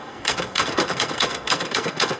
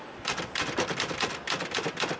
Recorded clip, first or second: second